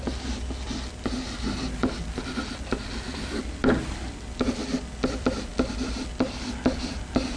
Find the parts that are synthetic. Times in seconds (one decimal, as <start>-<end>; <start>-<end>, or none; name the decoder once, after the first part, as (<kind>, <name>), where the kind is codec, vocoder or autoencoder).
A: none